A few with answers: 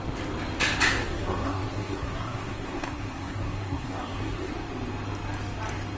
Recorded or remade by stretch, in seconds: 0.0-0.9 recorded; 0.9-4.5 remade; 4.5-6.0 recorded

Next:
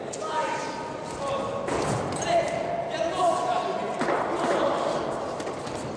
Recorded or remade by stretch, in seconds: 0.0-6.0 recorded

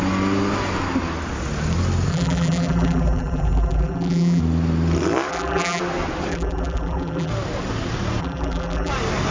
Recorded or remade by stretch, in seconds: 0.0-2.1 recorded; 2.1-4.4 remade; 4.4-5.3 recorded; 5.3-5.8 remade; 5.8-6.3 recorded; 6.3-7.3 remade; 7.3-8.2 recorded; 8.2-8.9 remade; 8.9-9.3 recorded